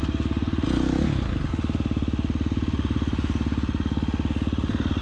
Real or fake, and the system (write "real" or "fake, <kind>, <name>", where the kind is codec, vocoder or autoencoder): real